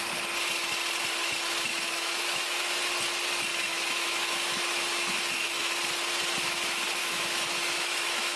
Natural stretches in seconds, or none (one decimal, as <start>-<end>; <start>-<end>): 0.0-1.7; 2.7-3.5; 5.7-7.0

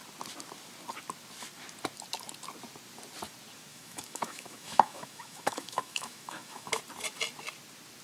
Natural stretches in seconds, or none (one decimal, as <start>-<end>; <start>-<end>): 0.0-3.7; 6.8-8.0

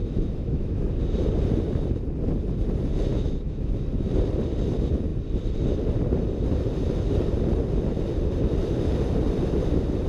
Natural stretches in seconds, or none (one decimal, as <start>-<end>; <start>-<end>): 0.9-3.1; 3.7-10.1

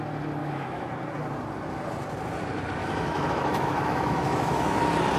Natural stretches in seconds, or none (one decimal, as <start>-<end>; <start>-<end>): 0.0-0.4; 0.9-2.8; 4.8-5.2